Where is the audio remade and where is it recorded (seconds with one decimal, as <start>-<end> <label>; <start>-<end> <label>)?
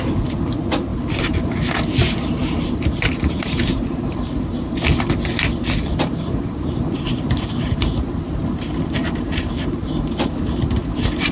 0.0-0.9 recorded; 0.9-1.5 remade; 1.5-2.4 recorded; 2.4-4.5 remade; 4.5-5.9 recorded; 5.9-10.4 remade; 10.4-11.3 recorded